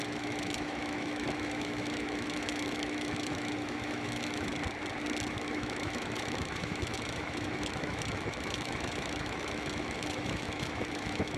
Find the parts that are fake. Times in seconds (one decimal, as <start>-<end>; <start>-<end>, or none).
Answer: 0.0-4.5; 5.3-11.4